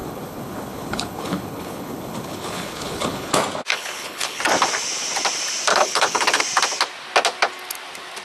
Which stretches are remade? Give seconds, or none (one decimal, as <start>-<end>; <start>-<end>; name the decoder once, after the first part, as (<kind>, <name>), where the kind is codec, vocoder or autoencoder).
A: 0.0-3.3 (codec, HILCodec); 3.7-4.4; 5.7-6.4